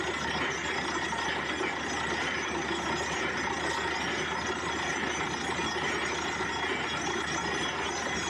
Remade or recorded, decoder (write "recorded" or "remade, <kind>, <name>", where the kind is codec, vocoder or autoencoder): recorded